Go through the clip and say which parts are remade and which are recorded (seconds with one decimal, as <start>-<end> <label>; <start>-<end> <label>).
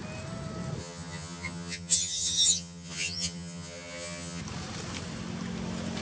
0.0-0.8 recorded; 0.8-4.4 remade; 4.4-6.0 recorded